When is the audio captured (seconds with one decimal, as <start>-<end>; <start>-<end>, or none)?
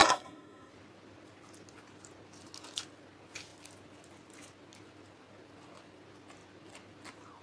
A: 0.7-7.4